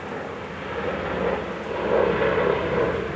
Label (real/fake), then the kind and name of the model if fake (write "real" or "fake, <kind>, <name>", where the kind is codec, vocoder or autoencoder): real